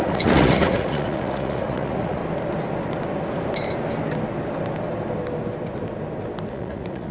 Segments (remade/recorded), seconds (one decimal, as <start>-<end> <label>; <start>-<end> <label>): 0.0-2.2 remade; 2.2-6.5 recorded; 6.5-7.1 remade